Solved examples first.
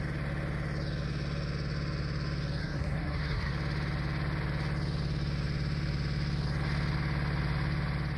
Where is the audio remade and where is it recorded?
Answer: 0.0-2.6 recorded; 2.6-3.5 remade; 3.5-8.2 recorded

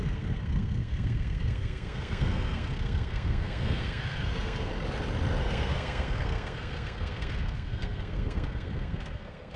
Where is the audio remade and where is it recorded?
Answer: 0.0-4.7 remade; 4.7-5.4 recorded; 5.4-9.6 remade

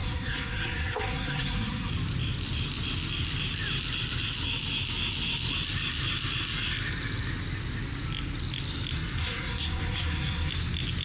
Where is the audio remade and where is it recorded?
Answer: 0.0-1.9 remade; 1.9-9.2 recorded; 9.2-10.5 remade; 10.5-11.0 recorded

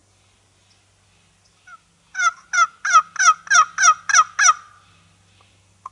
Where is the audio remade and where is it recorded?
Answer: 0.0-5.9 recorded

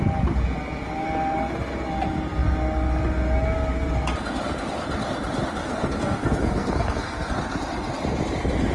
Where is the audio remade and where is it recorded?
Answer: 0.0-5.6 recorded; 5.6-7.3 remade; 7.3-8.7 recorded